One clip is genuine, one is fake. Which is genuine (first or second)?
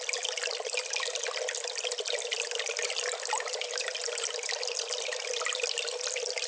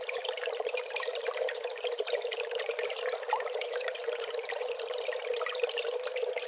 first